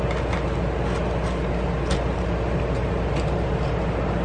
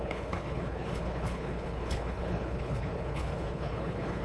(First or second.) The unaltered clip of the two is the first